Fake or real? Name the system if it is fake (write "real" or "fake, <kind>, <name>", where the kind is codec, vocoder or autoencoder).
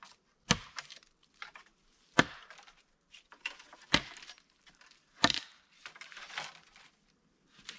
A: real